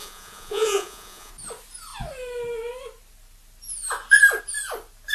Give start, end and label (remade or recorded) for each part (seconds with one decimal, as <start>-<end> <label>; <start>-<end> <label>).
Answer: 0.0-1.3 remade; 1.3-5.1 recorded